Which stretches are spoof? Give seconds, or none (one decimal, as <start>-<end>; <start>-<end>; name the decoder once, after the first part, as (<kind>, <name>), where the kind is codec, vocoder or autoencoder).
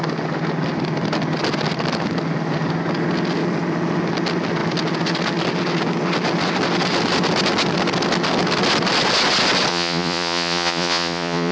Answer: 9.7-11.5 (vocoder, Vocos)